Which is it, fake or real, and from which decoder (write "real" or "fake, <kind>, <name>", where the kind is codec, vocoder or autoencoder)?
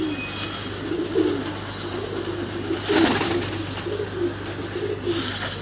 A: real